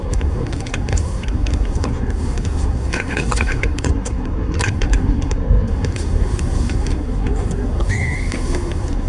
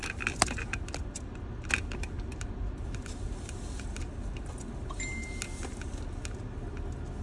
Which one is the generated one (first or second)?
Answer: first